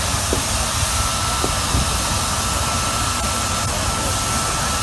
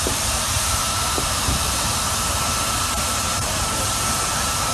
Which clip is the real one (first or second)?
first